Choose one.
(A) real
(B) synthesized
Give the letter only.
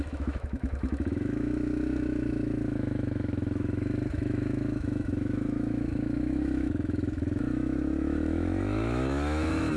B